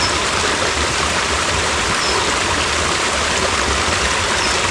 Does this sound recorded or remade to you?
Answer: recorded